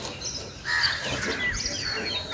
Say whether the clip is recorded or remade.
recorded